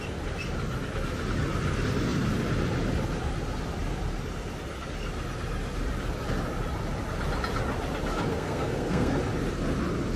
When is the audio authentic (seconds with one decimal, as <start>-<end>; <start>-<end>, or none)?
0.0-8.3; 9.2-10.2